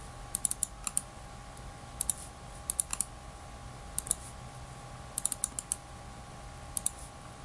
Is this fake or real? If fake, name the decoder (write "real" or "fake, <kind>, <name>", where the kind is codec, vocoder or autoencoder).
real